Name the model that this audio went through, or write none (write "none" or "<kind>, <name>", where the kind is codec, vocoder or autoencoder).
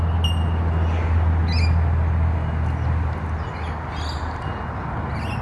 none